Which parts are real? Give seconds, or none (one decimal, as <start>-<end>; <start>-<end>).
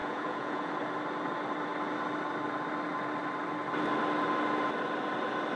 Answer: 0.7-5.6